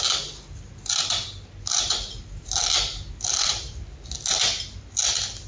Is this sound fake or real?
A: real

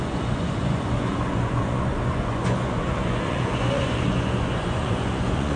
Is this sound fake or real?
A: fake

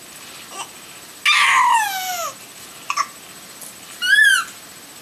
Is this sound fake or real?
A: real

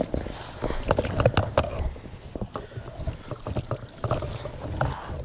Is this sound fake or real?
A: real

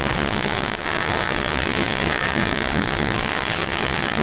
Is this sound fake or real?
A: fake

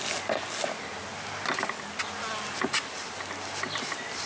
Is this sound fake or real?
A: real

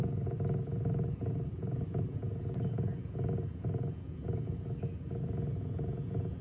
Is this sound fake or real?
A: fake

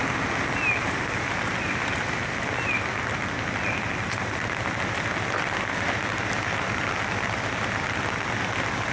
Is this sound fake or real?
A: real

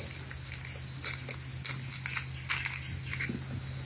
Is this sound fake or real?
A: real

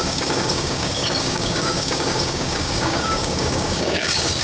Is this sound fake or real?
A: fake